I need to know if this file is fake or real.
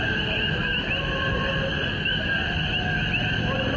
real